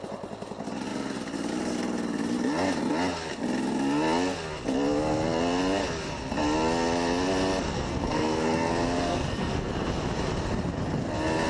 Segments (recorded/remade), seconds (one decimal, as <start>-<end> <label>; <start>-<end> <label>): 0.0-7.7 recorded; 7.7-8.7 remade; 8.7-9.1 recorded; 9.1-9.7 remade; 9.7-11.5 recorded